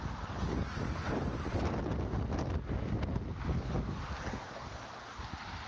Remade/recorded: recorded